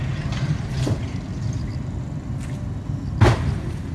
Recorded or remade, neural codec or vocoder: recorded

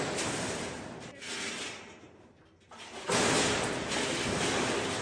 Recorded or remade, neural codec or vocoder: recorded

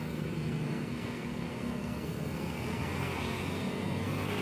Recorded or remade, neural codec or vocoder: remade, codec, SNAC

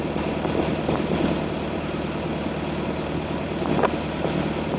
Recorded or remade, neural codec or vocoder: recorded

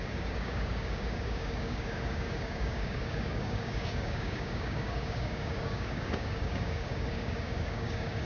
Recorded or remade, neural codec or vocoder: remade, codec, DAC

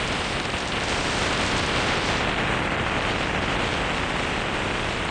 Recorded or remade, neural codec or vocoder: recorded